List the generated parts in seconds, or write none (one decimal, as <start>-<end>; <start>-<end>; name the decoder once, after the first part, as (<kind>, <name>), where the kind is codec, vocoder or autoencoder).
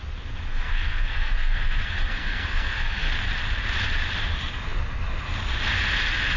0.5-3.1 (codec, SNAC)